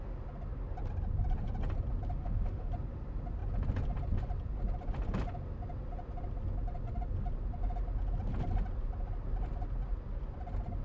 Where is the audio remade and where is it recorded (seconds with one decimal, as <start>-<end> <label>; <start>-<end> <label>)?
0.0-2.2 recorded; 2.2-2.7 remade; 2.7-10.8 recorded